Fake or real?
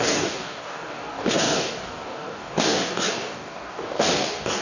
fake